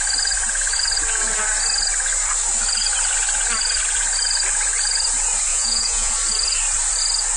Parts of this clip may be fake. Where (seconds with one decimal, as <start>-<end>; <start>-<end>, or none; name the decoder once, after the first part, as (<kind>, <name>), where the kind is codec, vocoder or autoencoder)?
5.5-6.1 (vocoder, Vocos)